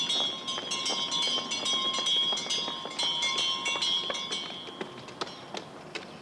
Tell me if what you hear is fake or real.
real